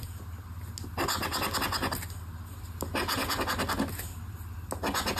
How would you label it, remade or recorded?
recorded